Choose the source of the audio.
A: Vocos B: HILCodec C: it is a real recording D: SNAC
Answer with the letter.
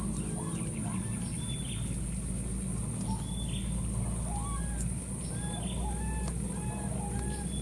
C